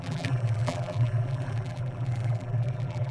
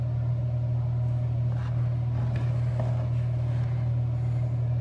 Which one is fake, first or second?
first